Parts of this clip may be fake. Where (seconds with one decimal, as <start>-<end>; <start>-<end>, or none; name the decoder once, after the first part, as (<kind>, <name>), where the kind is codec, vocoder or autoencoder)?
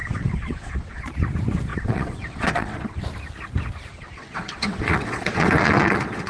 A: 0.0-1.0 (vocoder, WaveNeXt); 1.7-3.0; 3.9-6.3